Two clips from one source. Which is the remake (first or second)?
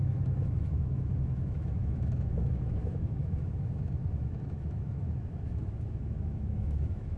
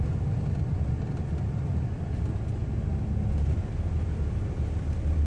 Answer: first